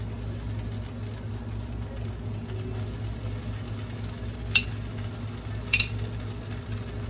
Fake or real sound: real